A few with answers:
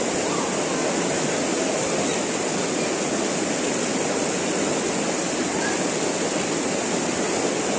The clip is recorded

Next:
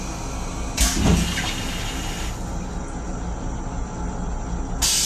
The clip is recorded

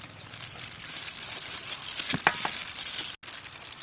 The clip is recorded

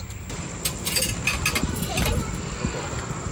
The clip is recorded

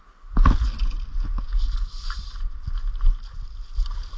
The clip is recorded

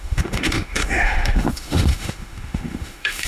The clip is remade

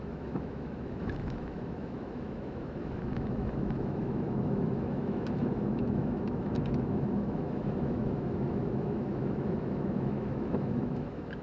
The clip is remade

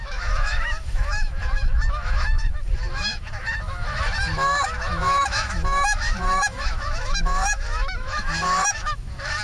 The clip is remade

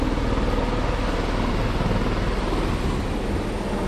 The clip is recorded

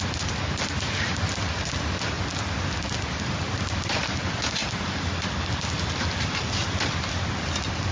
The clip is recorded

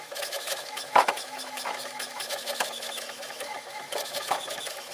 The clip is remade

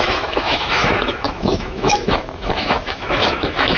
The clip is remade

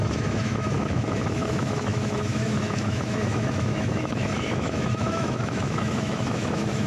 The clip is remade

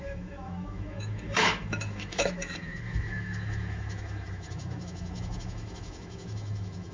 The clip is remade